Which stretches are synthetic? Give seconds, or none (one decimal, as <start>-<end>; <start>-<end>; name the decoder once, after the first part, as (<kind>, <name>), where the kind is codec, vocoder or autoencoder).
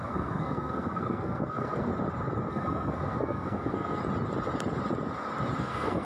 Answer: 0.0-1.9 (codec, SNAC); 2.5-4.0; 5.6-6.0